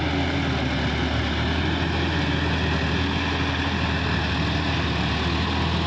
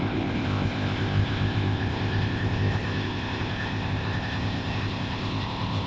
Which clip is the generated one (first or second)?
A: second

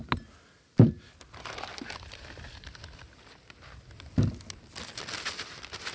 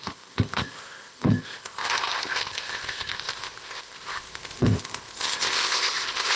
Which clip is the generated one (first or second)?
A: second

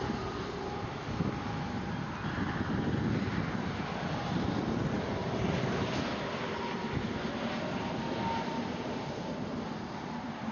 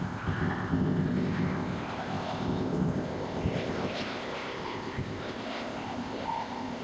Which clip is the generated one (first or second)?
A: second